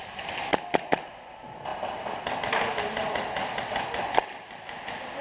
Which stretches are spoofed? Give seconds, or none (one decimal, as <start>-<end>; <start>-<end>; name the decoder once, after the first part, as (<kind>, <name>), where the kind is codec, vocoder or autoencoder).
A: 0.5-1.1 (vocoder, BigVGAN v2); 1.7-3.6